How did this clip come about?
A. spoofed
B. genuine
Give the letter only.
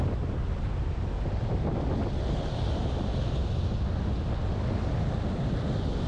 B